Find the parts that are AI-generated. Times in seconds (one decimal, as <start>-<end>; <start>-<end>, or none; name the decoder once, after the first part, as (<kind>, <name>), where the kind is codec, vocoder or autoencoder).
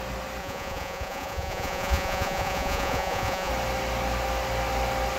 0.4-3.5 (vocoder, Vocos)